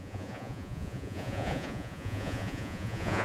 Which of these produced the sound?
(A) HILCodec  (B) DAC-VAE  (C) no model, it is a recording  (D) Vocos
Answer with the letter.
D